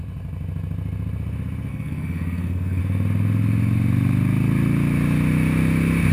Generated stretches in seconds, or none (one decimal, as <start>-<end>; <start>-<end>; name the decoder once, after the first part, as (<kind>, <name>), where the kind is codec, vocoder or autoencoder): 1.7-2.8 (codec, SNAC)